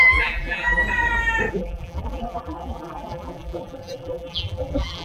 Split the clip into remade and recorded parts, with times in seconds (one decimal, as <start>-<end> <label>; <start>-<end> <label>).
0.0-0.8 remade; 0.8-1.5 recorded; 1.5-5.0 remade